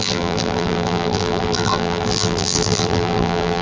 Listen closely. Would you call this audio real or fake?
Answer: fake